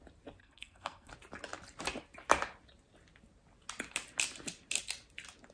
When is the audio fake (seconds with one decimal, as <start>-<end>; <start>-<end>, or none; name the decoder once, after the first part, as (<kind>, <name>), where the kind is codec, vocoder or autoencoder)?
0.4-1.1 (codec, SNAC)